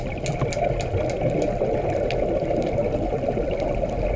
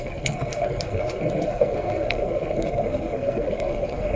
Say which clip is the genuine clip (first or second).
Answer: first